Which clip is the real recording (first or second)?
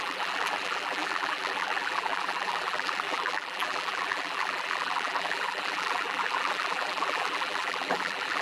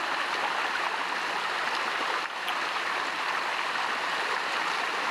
second